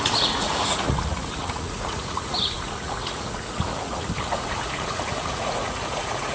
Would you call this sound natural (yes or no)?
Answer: no